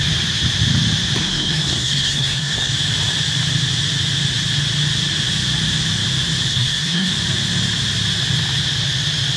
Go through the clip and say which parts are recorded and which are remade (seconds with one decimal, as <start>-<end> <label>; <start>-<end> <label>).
0.0-1.2 recorded; 1.2-2.7 remade; 2.7-6.5 recorded; 6.5-7.1 remade; 7.1-9.4 recorded